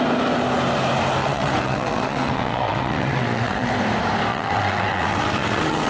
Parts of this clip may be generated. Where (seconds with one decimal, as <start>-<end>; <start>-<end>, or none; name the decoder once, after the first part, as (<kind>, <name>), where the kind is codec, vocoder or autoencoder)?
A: 1.2-3.7 (vocoder, WaveNeXt); 4.3-5.9